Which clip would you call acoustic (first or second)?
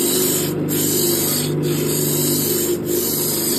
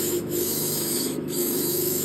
first